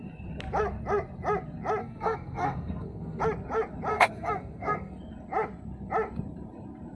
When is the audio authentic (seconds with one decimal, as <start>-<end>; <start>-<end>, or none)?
0.0-1.8; 3.2-3.9; 5.0-7.0